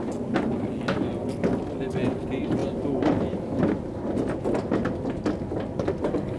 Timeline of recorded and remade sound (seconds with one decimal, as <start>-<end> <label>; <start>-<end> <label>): 0.0-6.4 recorded